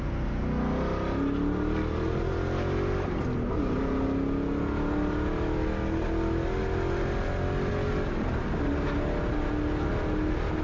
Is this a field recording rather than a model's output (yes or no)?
yes